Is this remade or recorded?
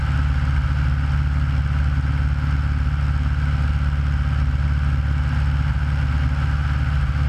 recorded